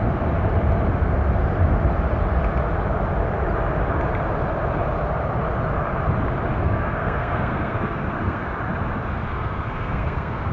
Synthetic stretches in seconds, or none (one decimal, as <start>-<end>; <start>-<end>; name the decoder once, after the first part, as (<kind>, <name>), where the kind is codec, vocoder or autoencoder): 6.5-8.4 (codec, SNAC); 9.3-10.5